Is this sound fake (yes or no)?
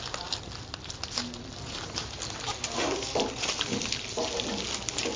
no